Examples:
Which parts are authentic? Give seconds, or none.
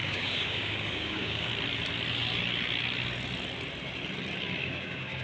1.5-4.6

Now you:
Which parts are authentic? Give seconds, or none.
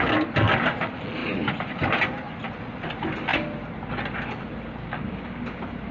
0.0-4.8; 5.4-5.9